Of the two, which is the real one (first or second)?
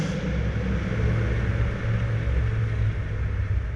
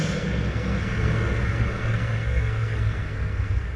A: first